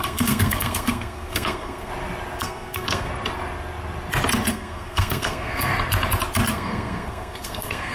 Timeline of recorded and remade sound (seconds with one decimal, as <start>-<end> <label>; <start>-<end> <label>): 0.0-1.9 remade; 1.9-2.4 recorded; 2.4-3.1 remade; 3.1-4.5 recorded; 4.5-5.7 remade; 5.7-6.5 recorded; 6.5-7.9 remade